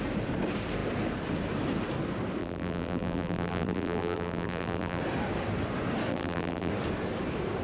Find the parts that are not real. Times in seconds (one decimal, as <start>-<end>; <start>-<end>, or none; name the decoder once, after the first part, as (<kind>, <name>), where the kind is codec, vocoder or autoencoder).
2.4-5.0 (vocoder, BigVGAN v2); 6.1-6.7

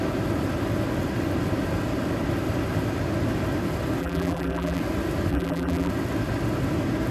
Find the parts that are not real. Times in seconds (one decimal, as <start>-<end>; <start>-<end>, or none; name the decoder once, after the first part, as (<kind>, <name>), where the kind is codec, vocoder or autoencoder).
4.0-4.8 (vocoder, BigVGAN v2); 5.3-5.9

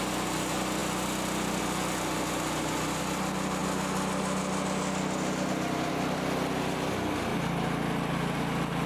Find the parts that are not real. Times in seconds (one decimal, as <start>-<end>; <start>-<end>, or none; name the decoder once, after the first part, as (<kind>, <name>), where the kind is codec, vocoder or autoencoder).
none

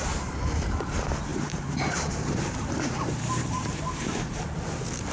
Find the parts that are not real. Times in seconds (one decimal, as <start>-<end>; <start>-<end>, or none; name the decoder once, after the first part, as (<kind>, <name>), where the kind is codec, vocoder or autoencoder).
1.3-4.4 (vocoder, BigVGAN v2)

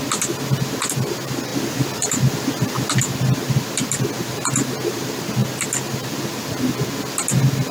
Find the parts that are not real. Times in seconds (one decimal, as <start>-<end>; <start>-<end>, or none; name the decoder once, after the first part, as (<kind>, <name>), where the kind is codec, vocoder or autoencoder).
1.5-2.9 (vocoder, BigVGAN v2)

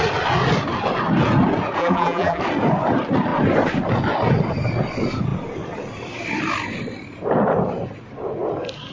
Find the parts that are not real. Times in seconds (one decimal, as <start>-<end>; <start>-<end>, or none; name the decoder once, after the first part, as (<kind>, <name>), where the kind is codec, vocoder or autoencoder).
1.8-2.4 (vocoder, BigVGAN v2)

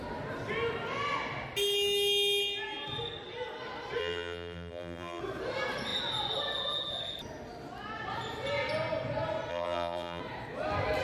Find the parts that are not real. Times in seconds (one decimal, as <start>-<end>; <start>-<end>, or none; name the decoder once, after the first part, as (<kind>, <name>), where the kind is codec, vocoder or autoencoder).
4.0-5.2 (vocoder, BigVGAN v2); 9.5-10.2